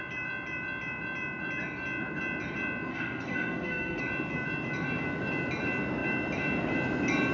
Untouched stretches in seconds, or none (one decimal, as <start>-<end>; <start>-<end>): 0.0-2.9; 4.0-7.3